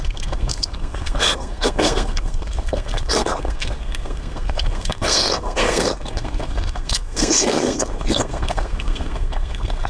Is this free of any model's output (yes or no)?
no